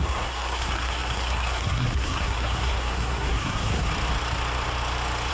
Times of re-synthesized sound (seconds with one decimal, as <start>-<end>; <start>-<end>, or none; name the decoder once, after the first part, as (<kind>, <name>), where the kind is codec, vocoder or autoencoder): 0.0-3.9 (codec, SNAC)